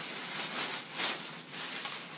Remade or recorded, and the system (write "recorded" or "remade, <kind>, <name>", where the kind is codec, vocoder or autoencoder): recorded